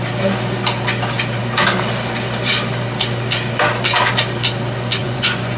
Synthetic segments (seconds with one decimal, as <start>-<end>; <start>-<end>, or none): 5.0-5.6